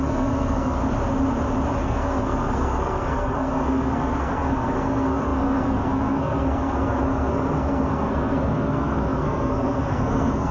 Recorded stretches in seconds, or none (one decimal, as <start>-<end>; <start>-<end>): 0.8-1.8